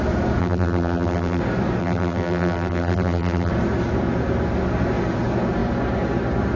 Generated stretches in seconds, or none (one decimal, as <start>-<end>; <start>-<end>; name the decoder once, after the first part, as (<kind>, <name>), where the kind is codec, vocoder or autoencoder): 0.4-1.4 (vocoder, BigVGAN v2); 1.8-3.5